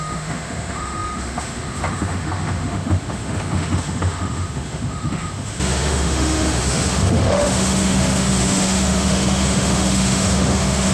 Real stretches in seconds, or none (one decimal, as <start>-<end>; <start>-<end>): none